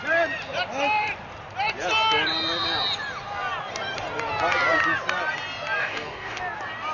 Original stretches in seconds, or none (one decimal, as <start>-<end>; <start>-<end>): 0.0-5.8; 6.4-6.9